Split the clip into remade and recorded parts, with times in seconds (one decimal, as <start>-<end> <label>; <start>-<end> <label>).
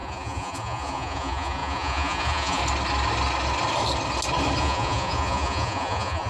0.0-2.6 remade; 2.6-4.6 recorded; 4.6-6.3 remade